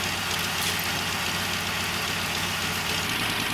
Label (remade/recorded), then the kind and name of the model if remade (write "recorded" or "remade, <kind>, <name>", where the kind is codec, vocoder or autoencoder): recorded